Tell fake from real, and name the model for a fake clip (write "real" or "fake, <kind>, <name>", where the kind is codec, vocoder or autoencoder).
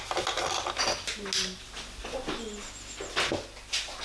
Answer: real